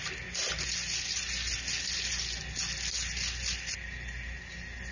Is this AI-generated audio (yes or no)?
no